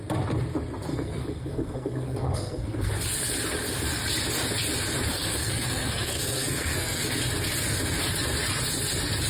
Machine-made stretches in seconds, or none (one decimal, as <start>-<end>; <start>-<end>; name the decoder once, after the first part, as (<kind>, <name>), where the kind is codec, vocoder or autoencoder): 0.9-2.9 (codec, SNAC); 5.1-7.1